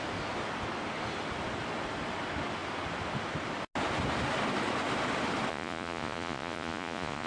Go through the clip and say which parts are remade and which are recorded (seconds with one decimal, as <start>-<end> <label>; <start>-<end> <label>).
0.0-5.5 recorded; 5.5-7.3 remade